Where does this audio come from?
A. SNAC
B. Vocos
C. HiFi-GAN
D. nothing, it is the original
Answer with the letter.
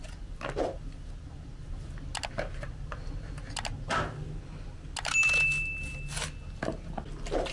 D